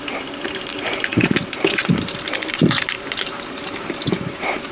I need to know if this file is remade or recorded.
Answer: remade